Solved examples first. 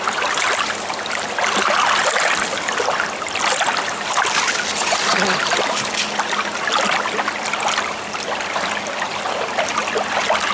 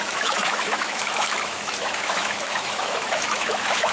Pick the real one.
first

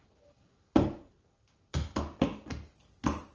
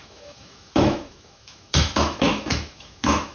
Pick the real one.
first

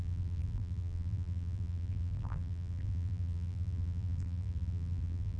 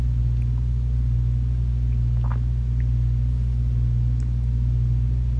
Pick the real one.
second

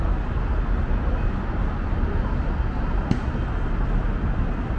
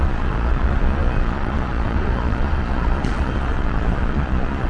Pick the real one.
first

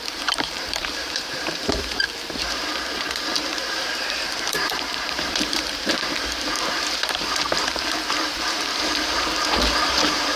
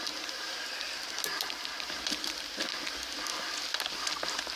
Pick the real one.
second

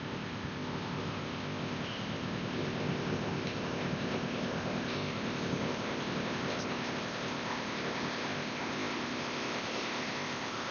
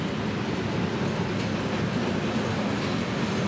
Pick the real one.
second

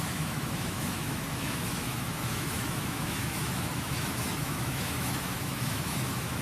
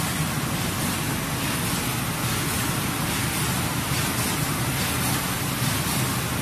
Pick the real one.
second